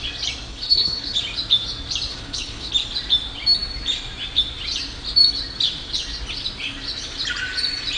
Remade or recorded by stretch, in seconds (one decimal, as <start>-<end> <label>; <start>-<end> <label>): 0.0-0.5 recorded; 0.5-1.2 remade; 1.2-2.1 recorded; 2.1-2.7 remade; 2.7-8.0 recorded